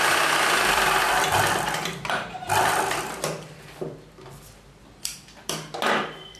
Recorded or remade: remade